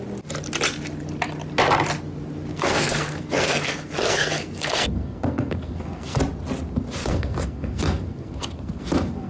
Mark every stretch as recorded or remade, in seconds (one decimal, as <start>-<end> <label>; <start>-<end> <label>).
0.0-2.5 recorded; 2.5-6.2 remade; 6.2-7.0 recorded; 7.0-9.3 remade